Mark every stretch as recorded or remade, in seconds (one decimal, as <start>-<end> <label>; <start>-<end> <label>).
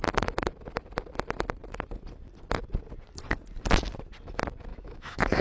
0.0-4.7 recorded; 4.7-5.4 remade